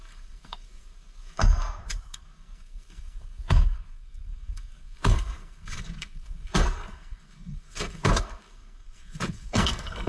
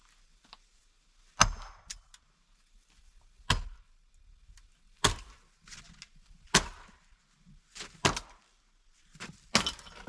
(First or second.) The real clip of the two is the second